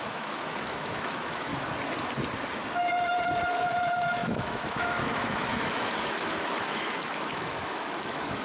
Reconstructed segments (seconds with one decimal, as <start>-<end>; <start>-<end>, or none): 0.0-1.5; 2.8-8.4